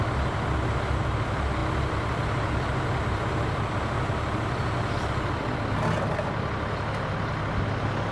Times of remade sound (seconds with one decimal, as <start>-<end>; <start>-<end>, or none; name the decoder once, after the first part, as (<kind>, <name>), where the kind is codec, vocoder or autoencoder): none